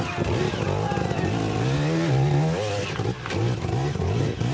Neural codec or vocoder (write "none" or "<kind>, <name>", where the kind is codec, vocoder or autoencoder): none